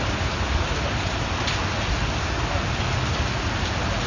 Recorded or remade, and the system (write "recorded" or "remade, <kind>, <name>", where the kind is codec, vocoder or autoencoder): recorded